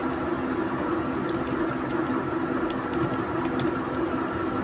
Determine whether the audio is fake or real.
real